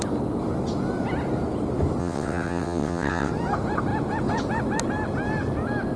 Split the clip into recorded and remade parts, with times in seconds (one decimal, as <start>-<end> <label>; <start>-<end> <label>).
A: 0.0-2.0 recorded; 2.0-3.3 remade; 3.3-6.0 recorded